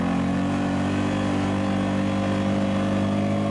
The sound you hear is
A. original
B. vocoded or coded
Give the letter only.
A